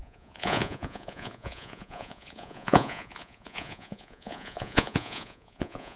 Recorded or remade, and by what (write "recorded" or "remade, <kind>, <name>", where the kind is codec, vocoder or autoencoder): remade, vocoder, Vocos